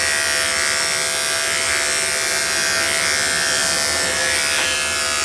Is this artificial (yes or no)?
no